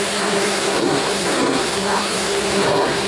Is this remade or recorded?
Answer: remade